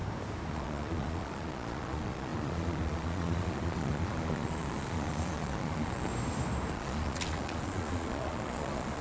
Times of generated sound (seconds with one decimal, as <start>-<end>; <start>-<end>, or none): 0.5-6.1; 6.7-9.0